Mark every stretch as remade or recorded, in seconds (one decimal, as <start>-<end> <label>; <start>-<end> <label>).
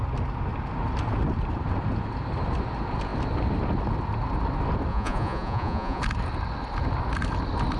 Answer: 0.0-4.9 recorded; 4.9-6.0 remade; 6.0-7.8 recorded